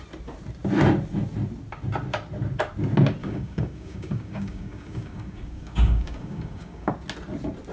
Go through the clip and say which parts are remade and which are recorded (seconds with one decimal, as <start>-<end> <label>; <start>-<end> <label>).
0.0-3.2 recorded; 3.2-6.9 remade; 6.9-7.7 recorded